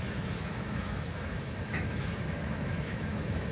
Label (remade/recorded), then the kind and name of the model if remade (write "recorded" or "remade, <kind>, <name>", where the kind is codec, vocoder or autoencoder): remade, autoencoder, DAC-VAE